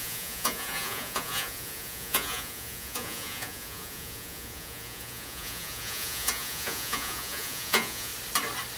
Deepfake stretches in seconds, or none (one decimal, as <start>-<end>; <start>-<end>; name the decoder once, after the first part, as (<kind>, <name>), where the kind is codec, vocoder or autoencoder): 0.0-8.1 (vocoder, Vocos)